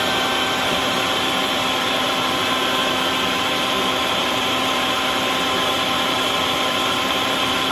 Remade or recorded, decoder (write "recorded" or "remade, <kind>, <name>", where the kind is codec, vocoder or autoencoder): remade, vocoder, BigVGAN v2